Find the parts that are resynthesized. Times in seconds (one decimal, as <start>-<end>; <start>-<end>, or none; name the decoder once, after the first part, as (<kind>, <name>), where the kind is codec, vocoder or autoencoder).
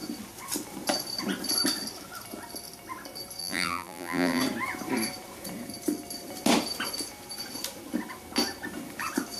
3.4-4.4 (vocoder, BigVGAN v2)